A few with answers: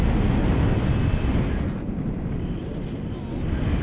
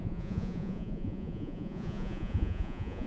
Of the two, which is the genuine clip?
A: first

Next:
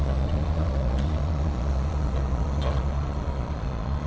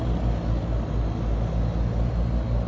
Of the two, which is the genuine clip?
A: second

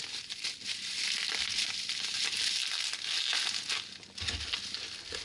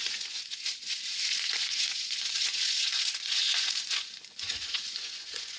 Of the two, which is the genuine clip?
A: first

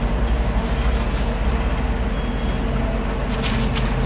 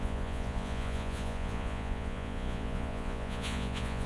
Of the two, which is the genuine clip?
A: first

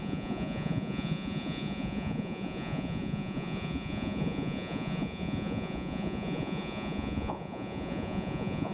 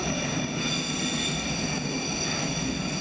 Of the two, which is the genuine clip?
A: second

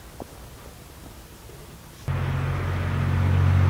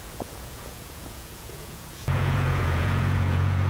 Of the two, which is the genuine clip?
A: first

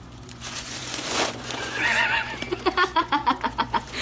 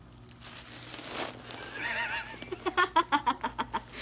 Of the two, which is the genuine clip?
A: second